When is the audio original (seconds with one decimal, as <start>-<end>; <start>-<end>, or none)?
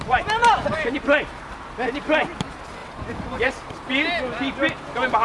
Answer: 0.0-2.8; 3.7-5.2